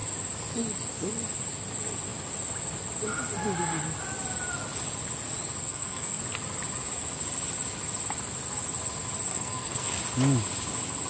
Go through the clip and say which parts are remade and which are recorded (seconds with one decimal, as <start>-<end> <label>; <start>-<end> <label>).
0.0-5.6 recorded; 5.6-6.2 remade; 6.2-9.3 recorded; 9.3-10.0 remade; 10.0-11.1 recorded